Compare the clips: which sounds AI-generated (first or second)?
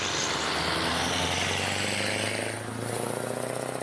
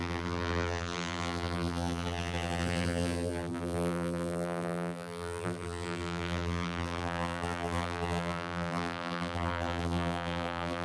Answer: second